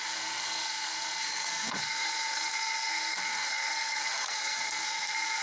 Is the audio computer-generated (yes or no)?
yes